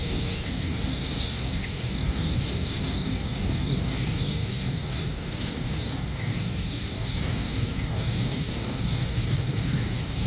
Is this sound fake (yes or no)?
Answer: yes